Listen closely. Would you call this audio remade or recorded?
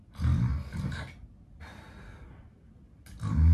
recorded